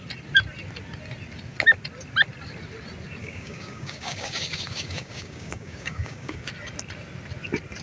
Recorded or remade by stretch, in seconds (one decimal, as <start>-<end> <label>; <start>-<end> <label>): 0.0-3.2 recorded; 3.2-6.5 remade; 6.5-7.8 recorded